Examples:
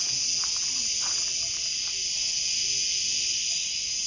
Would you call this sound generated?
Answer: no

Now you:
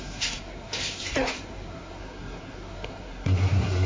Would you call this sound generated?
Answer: yes